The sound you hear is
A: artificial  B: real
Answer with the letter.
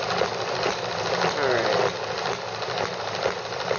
B